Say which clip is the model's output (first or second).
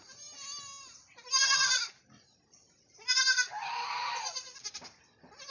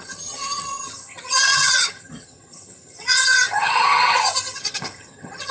second